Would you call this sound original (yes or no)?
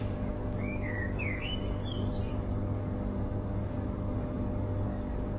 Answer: no